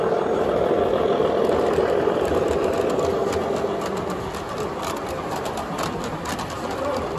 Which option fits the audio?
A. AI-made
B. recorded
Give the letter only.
B